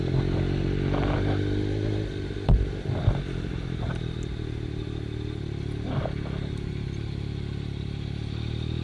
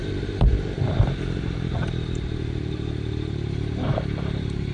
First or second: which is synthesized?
second